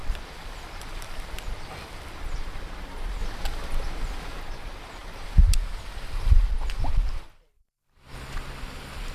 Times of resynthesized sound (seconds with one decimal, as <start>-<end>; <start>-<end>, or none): 0.0-3.2; 4.4-5.0; 5.5-9.1